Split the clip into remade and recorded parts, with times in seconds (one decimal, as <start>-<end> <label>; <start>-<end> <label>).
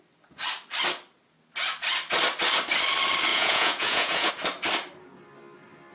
0.0-3.3 recorded; 3.3-4.3 remade; 4.3-5.9 recorded